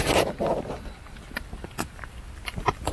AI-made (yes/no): no